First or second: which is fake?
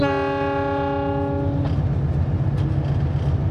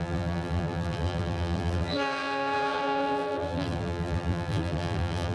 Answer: second